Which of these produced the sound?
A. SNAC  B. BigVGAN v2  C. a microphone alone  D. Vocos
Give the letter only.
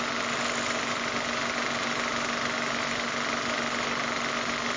C